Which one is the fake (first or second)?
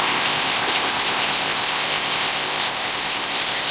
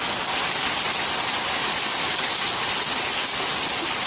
first